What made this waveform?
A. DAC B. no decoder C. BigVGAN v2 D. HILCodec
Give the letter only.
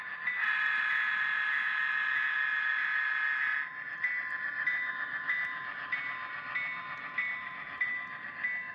B